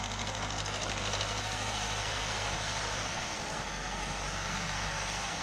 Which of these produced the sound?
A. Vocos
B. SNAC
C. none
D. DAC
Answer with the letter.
B